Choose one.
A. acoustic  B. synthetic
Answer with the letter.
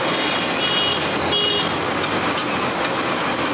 A